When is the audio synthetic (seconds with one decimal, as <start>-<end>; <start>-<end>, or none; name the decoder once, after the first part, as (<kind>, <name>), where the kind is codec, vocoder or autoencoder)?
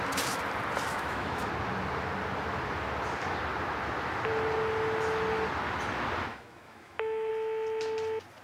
0.9-1.5 (autoencoder, DAC-VAE); 6.3-7.3